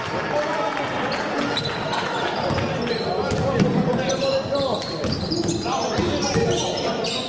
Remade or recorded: recorded